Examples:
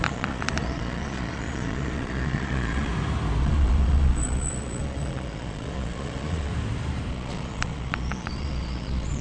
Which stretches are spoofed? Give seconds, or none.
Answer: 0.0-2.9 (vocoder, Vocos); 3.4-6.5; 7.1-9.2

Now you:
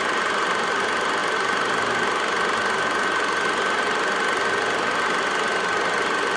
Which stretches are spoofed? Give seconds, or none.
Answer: none

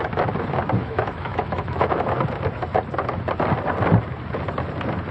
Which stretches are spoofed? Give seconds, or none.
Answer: 0.8-2.0 (autoencoder, DAC-VAE)

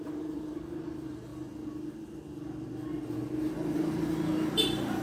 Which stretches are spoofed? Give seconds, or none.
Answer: 0.0-1.3 (vocoder, BigVGAN v2); 3.8-5.0

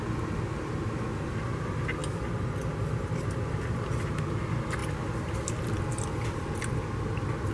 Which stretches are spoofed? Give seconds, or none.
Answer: none